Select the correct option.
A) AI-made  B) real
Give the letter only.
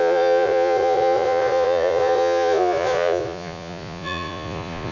A